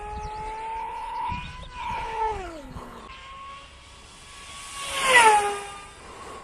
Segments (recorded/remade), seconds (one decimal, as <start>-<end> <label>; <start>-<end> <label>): 0.0-0.8 recorded; 0.8-1.3 remade; 1.3-1.8 recorded; 1.8-3.0 remade; 3.0-6.4 recorded